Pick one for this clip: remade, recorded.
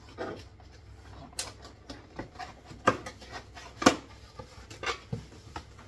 recorded